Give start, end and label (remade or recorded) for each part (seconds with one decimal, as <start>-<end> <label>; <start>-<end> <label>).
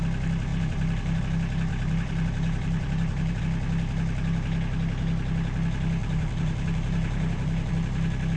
0.0-0.5 recorded; 0.5-1.2 remade; 1.2-1.7 recorded; 1.7-3.4 remade; 3.4-6.0 recorded; 6.0-7.7 remade; 7.7-8.4 recorded